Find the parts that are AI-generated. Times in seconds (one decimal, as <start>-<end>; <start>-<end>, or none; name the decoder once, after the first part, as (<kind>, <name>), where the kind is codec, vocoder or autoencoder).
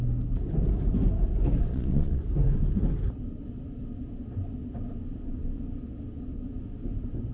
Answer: 1.7-2.2 (vocoder, Vocos)